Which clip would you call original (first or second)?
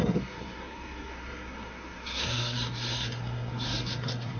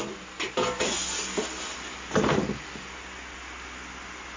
second